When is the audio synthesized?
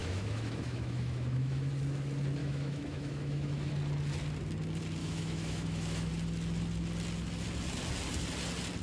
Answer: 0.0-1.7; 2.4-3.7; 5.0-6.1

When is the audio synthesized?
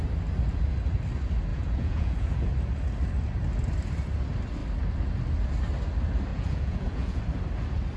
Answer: 1.5-2.5; 6.3-7.2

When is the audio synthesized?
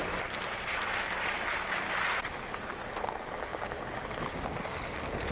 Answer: none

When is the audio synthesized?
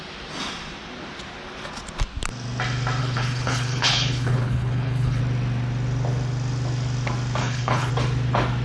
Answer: 3.0-5.2; 7.4-7.9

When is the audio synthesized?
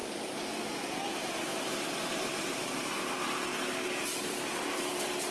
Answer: 1.5-2.4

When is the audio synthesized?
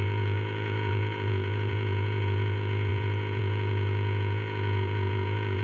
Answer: 0.0-5.6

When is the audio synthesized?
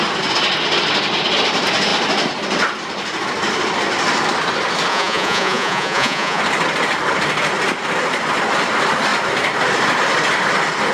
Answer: 4.9-6.4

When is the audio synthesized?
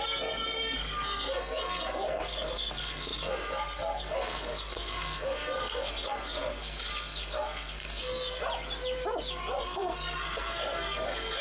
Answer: 0.0-8.4; 9.6-11.4